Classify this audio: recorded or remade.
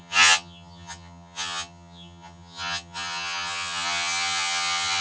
remade